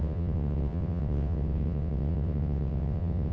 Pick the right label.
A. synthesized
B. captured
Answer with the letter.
A